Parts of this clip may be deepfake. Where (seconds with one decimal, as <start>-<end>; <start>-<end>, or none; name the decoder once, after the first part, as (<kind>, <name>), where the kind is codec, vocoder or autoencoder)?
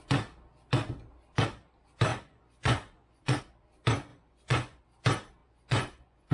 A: 2.1-3.4 (vocoder, Vocos); 4.1-4.8; 5.4-6.3